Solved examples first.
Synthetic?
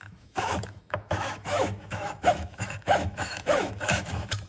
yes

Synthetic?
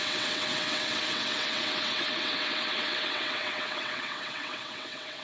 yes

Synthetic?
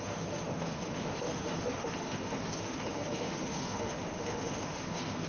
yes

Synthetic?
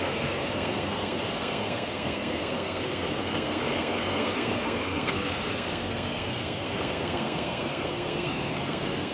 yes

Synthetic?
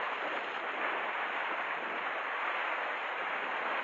no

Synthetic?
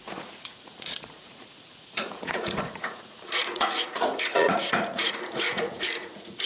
yes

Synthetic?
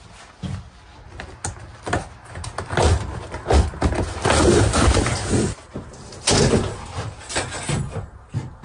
no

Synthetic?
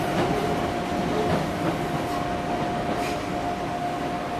no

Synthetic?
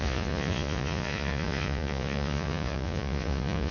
yes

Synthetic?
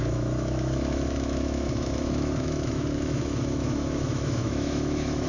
yes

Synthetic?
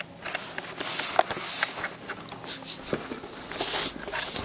no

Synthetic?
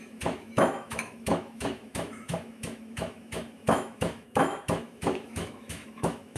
yes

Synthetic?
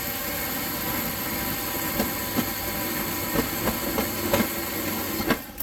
no